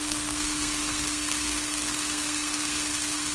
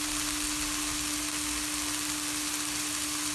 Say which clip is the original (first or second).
second